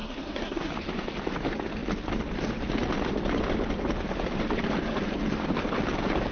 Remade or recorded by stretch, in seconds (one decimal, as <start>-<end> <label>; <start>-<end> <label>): 0.0-0.7 remade; 0.7-6.3 recorded